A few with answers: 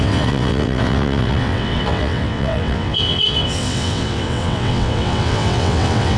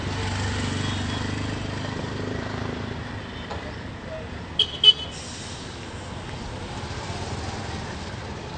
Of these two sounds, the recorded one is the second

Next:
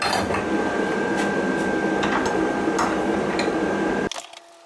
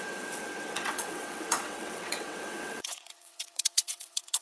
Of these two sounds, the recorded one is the first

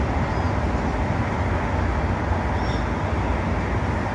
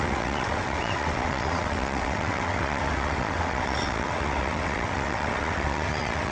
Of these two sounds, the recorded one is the first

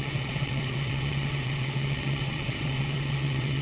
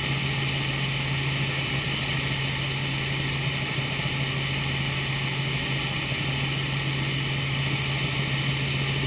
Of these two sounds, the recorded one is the second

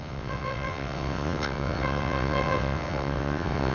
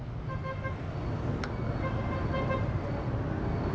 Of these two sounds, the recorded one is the second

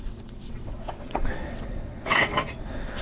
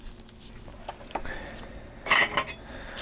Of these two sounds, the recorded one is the second